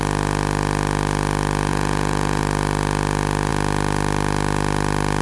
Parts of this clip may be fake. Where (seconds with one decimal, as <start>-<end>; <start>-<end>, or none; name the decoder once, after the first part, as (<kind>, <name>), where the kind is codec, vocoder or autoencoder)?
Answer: 1.7-2.4 (vocoder, Vocos)